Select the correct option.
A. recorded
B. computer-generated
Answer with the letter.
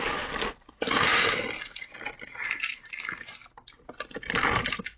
A